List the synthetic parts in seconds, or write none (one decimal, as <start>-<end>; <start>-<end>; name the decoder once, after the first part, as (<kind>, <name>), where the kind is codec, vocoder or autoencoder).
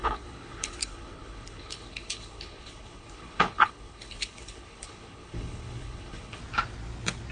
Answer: 0.0-6.4 (codec, HILCodec)